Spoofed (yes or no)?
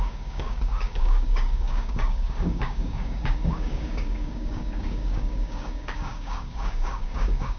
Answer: yes